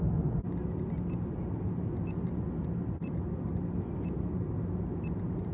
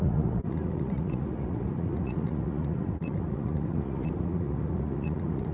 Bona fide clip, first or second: first